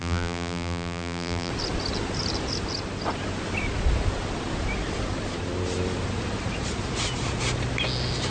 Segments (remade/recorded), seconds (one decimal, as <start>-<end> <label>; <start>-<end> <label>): 0.0-1.5 remade; 1.5-8.3 recorded